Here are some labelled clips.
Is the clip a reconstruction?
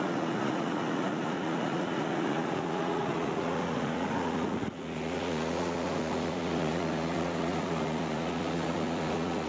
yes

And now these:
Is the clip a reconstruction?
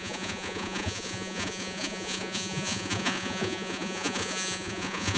yes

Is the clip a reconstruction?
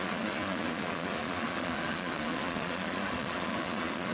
yes